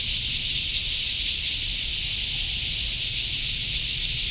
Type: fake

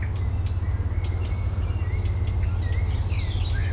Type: real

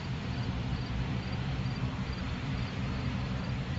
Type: fake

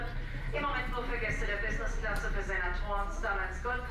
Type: real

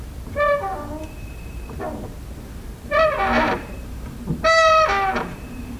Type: fake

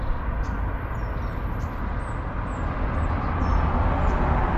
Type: real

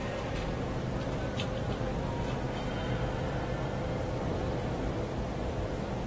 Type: fake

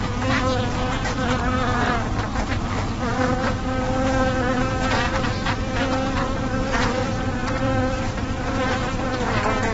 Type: real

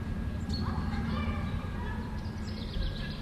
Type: fake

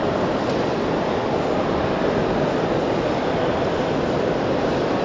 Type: fake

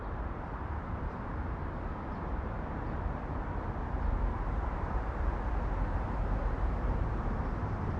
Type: fake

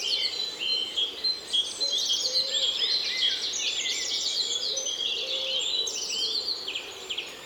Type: real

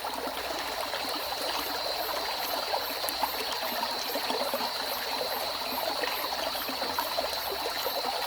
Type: real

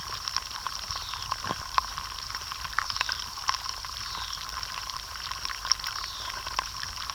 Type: fake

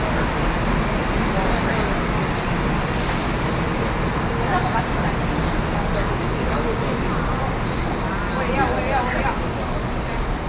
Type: real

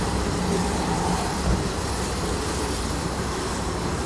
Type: fake